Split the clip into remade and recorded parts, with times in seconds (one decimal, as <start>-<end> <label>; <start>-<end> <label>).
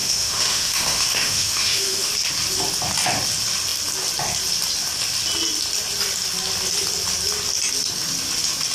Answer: 0.0-2.1 remade; 2.1-8.7 recorded